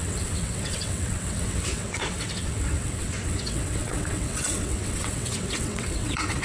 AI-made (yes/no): yes